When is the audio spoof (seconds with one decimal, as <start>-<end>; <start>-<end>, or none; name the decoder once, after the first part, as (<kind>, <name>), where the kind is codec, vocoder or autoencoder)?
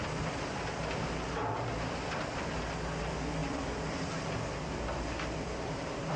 1.4-2.4 (vocoder, BigVGAN v2); 3.4-5.7